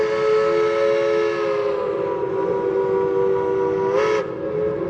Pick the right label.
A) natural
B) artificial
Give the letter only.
A